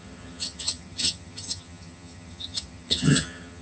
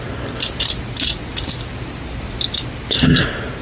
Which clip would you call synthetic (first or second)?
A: first